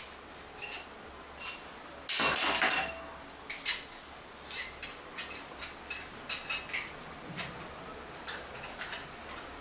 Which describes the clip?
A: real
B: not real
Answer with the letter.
A